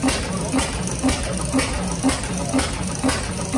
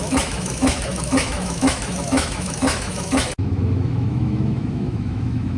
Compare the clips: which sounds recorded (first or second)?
first